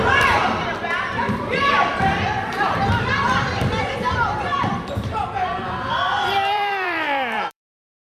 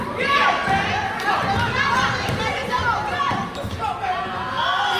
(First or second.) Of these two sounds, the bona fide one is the second